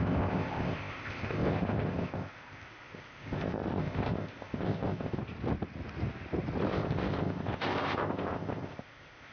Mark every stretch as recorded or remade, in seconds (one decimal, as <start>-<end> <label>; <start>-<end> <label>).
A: 0.0-5.2 remade; 5.2-6.7 recorded; 6.7-9.3 remade